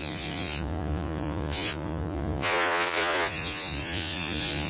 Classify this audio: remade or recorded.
remade